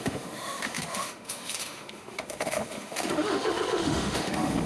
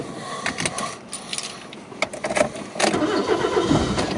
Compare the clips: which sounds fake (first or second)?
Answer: first